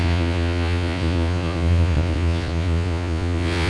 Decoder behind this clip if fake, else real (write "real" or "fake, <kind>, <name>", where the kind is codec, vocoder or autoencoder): fake, vocoder, Vocos